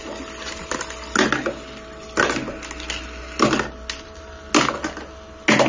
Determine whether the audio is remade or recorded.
recorded